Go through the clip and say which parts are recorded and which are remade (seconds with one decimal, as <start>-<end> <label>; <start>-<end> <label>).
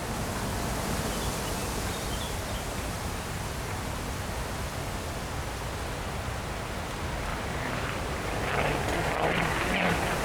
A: 0.0-1.6 recorded; 1.6-3.4 remade; 3.4-7.3 recorded; 7.3-8.5 remade; 8.5-10.2 recorded